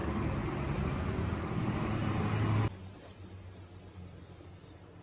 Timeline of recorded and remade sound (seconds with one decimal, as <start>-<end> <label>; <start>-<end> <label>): 0.0-5.0 recorded